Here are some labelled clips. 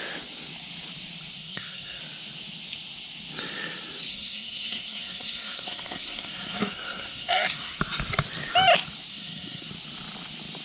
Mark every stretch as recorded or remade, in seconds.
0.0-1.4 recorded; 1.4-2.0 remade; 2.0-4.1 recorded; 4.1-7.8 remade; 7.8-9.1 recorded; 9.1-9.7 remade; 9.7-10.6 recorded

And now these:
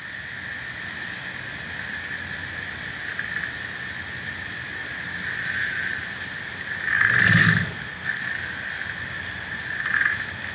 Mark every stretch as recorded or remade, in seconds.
0.0-7.4 recorded; 7.4-8.2 remade; 8.2-10.5 recorded

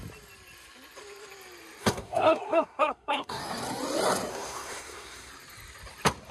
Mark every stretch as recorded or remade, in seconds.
0.0-1.8 recorded; 1.8-3.4 remade; 3.4-4.3 recorded; 4.3-5.3 remade; 5.3-6.3 recorded

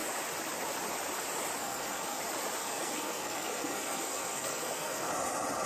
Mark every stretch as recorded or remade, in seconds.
0.0-1.6 recorded; 1.6-2.2 remade; 2.2-2.6 recorded; 2.6-5.1 remade; 5.1-5.7 recorded

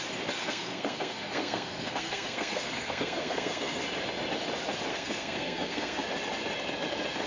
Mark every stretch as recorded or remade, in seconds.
0.0-0.4 recorded; 0.4-3.8 remade; 3.8-4.9 recorded; 4.9-6.0 remade; 6.0-7.3 recorded

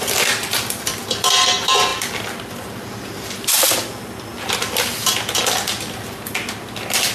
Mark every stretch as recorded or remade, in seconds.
0.0-7.1 recorded